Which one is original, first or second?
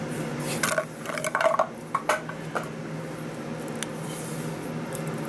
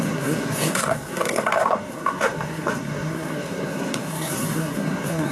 first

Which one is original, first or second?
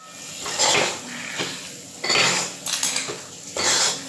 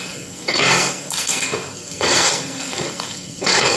first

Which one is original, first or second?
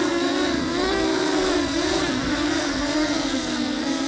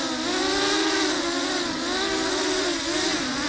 second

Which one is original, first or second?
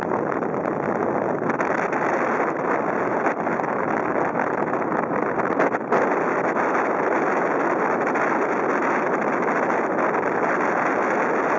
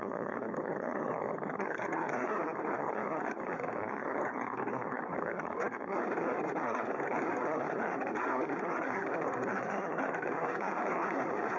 first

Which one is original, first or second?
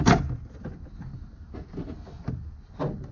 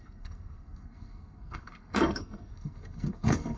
first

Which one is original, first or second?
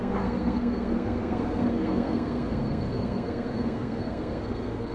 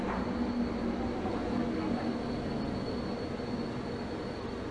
second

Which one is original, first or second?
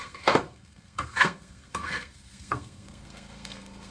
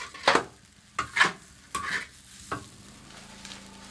second